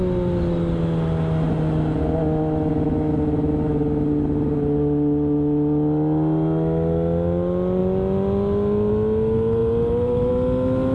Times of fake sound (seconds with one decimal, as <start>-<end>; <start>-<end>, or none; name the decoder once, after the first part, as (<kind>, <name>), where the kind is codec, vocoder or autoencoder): 9.6-10.3 (vocoder, BigVGAN v2)

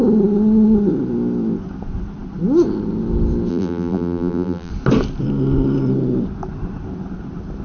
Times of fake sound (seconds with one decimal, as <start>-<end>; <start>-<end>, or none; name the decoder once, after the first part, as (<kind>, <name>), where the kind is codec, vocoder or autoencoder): 3.5-4.7 (vocoder, BigVGAN v2)

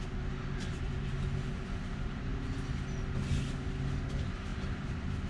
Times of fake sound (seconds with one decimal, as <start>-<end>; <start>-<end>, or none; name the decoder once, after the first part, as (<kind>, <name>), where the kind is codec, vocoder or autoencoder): 0.6-2.3 (vocoder, BigVGAN v2); 4.1-5.3

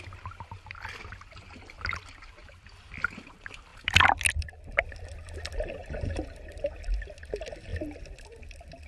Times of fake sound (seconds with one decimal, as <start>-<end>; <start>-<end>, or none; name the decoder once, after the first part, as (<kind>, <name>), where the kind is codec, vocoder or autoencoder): 5.8-6.4 (vocoder, BigVGAN v2)